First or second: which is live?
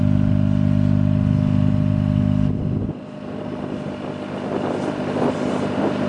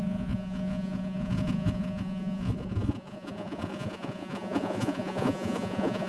first